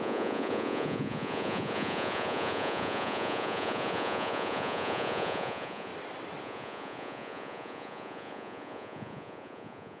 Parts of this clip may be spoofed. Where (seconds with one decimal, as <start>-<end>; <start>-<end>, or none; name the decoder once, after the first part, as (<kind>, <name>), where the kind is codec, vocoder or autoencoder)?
0.0-5.9 (vocoder, Vocos); 6.4-10.0